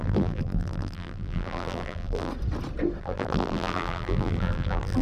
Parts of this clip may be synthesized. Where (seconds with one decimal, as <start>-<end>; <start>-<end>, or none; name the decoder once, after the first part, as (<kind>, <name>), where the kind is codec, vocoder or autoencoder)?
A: 0.0-2.3 (vocoder, BigVGAN v2); 3.0-5.0